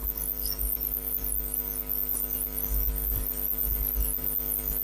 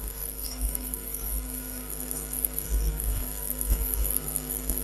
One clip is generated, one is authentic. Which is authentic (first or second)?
first